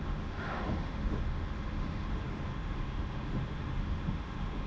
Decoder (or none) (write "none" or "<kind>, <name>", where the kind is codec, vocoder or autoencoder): autoencoder, DAC-VAE